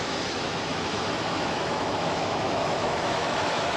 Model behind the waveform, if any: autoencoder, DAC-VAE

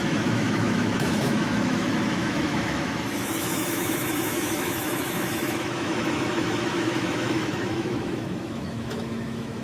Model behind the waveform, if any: autoencoder, DAC-VAE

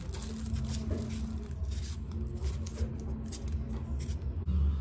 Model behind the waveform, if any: none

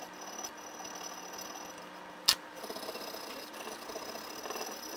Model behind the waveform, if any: none